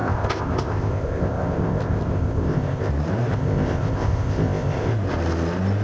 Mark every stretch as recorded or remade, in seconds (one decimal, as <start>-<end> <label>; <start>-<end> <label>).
0.0-2.9 remade; 2.9-3.3 recorded; 3.3-4.9 remade; 4.9-5.8 recorded